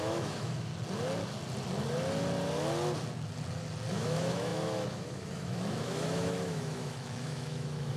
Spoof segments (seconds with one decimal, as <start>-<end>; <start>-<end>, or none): 0.0-0.7; 3.9-8.0